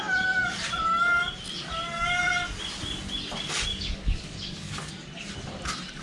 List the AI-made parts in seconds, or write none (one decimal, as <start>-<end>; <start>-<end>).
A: 3.7-4.9